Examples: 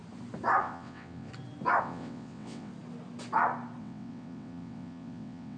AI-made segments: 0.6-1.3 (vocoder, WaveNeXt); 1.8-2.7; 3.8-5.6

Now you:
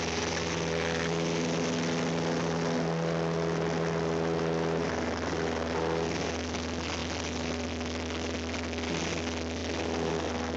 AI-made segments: none

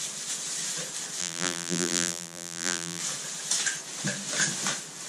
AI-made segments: 1.2-3.0 (vocoder, BigVGAN v2)

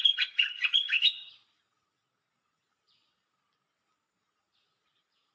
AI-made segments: 0.0-1.3 (vocoder, HiFi-GAN)